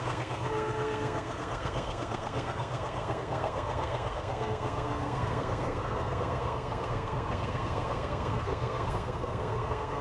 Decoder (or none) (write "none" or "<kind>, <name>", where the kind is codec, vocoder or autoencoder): codec, SNAC